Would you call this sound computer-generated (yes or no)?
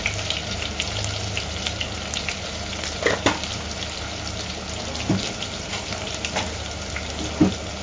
no